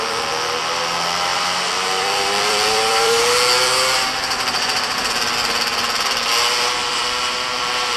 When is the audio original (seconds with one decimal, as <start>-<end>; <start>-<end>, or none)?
0.0-1.3; 3.2-4.2; 5.1-6.8